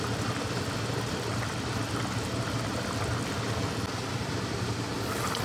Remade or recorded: recorded